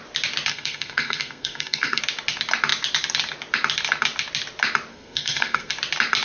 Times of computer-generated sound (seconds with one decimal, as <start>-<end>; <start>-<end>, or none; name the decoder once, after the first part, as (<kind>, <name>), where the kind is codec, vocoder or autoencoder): 0.5-2.0 (codec, SNAC); 4.9-5.7